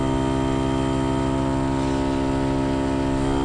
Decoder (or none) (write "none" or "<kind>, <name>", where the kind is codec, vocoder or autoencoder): none